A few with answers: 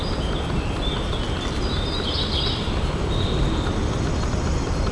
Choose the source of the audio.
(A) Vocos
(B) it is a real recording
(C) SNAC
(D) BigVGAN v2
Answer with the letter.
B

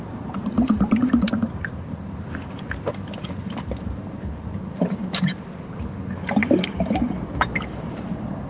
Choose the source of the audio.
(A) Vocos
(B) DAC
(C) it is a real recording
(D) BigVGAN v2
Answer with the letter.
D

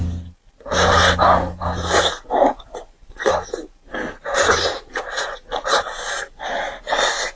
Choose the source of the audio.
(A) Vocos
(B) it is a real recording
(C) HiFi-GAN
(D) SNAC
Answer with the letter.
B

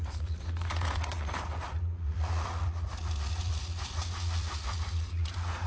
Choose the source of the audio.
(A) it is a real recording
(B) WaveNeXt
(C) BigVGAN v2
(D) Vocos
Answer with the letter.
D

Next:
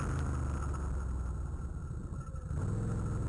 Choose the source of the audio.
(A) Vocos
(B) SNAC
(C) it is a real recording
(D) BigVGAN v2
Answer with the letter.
C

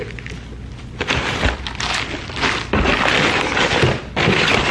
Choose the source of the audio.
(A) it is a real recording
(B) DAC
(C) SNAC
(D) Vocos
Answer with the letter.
A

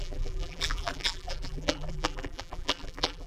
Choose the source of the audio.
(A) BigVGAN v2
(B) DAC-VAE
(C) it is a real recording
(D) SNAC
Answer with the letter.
A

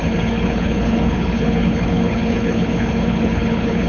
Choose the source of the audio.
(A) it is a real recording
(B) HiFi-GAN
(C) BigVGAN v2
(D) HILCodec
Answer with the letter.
D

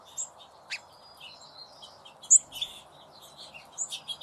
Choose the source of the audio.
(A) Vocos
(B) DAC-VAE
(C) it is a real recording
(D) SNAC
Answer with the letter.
C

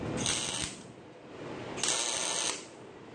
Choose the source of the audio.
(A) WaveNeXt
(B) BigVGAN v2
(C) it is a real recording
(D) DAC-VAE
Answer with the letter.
C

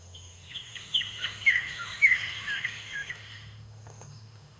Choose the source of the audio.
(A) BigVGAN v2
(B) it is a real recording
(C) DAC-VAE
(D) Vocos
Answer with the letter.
C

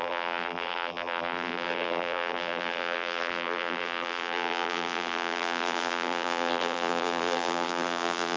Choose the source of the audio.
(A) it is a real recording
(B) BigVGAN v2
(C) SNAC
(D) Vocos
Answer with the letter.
B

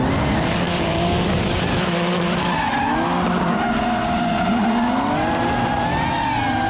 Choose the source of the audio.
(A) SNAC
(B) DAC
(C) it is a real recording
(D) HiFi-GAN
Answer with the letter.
C